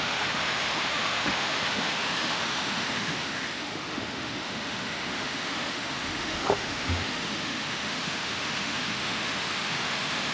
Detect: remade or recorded remade